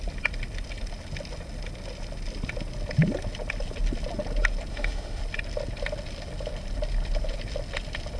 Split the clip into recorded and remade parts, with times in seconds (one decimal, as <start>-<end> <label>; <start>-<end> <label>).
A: 0.0-4.7 recorded; 4.7-5.2 remade; 5.2-8.2 recorded

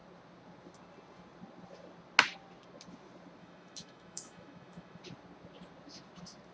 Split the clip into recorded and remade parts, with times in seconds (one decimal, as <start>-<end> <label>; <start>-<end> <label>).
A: 0.0-3.4 recorded; 3.4-5.0 remade; 5.0-6.5 recorded